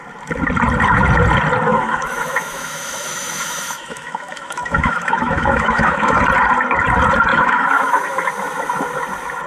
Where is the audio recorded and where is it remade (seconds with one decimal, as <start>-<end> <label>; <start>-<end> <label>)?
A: 0.0-1.7 recorded; 1.7-6.2 remade; 6.2-7.3 recorded; 7.3-8.3 remade; 8.3-9.5 recorded

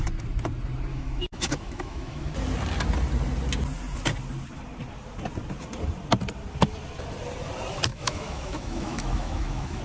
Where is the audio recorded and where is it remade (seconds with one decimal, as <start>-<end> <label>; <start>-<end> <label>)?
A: 0.0-0.9 recorded; 0.9-2.3 remade; 2.3-7.9 recorded; 7.9-9.8 remade

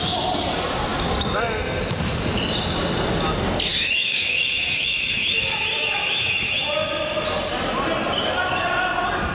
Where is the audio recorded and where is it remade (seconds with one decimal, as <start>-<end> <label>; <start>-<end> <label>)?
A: 0.0-3.7 recorded; 3.7-6.9 remade; 6.9-9.3 recorded